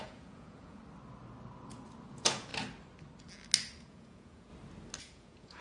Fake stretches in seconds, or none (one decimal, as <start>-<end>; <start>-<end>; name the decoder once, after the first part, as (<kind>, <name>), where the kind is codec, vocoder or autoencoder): 0.0-0.8 (vocoder, Vocos); 2.1-2.5; 3.8-4.5; 5.0-5.6